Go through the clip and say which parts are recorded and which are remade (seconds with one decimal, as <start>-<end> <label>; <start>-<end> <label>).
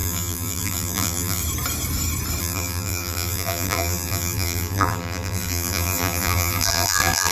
0.0-1.4 remade; 1.4-2.4 recorded; 2.4-7.3 remade